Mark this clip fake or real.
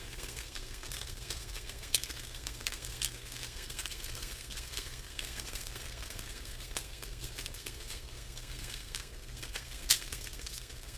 fake